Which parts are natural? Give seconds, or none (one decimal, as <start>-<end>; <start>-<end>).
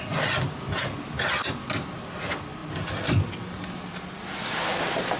0.0-5.2